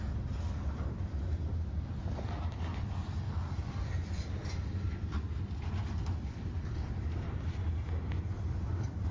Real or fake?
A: real